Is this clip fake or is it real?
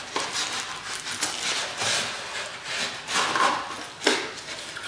real